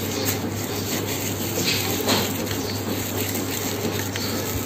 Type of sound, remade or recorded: recorded